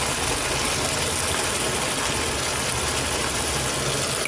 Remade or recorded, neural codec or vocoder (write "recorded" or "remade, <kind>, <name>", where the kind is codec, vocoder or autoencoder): recorded